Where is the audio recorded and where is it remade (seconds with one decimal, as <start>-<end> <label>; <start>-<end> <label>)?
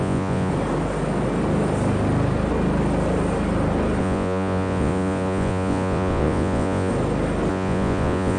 0.0-0.5 remade; 0.5-4.0 recorded; 4.0-6.9 remade; 6.9-7.5 recorded; 7.5-8.4 remade